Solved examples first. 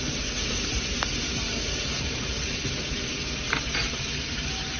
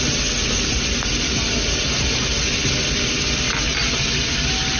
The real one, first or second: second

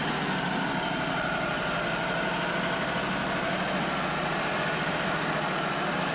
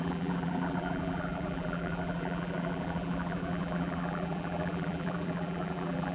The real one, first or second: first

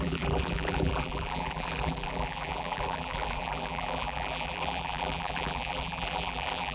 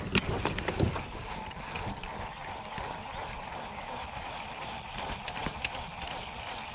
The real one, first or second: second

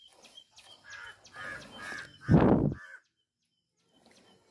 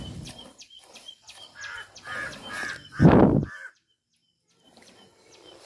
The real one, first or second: first